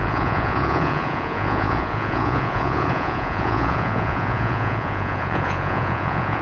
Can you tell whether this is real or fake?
fake